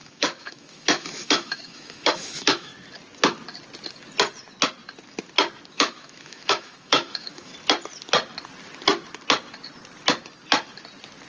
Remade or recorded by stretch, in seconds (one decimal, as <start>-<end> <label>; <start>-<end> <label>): 0.0-2.7 remade; 2.7-5.7 recorded; 5.7-7.5 remade; 7.5-11.3 recorded